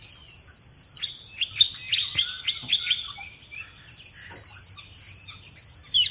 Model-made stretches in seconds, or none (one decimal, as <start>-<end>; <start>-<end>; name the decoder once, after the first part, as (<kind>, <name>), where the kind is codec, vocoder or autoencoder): none